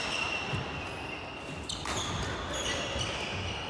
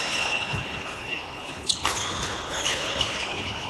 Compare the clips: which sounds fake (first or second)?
second